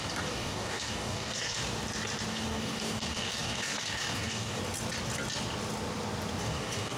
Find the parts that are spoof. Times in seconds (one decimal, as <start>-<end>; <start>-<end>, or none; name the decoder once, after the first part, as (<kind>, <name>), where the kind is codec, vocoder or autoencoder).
0.0-1.6 (codec, DAC); 2.3-4.6; 6.4-7.0